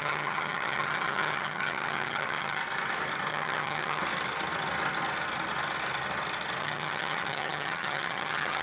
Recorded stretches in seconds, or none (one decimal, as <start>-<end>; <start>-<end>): 2.6-3.3; 4.0-6.6

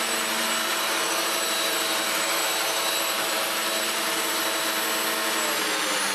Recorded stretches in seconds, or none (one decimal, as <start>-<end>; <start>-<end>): 0.0-0.7; 4.4-6.1